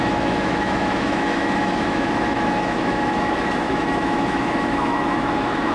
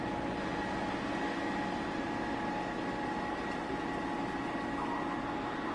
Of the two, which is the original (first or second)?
second